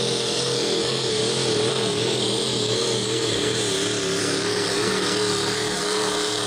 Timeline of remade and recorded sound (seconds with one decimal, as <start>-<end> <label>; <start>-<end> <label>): 0.0-1.2 remade; 1.2-1.7 recorded; 1.7-3.6 remade; 3.6-4.2 recorded; 4.2-6.5 remade